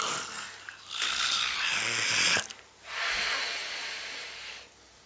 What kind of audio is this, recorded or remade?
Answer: recorded